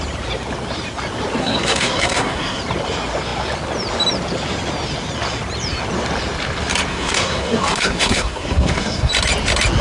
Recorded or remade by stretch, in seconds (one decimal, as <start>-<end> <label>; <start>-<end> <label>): 0.0-1.4 recorded; 1.4-2.6 remade; 2.6-6.9 recorded; 6.9-9.1 remade; 9.1-9.8 recorded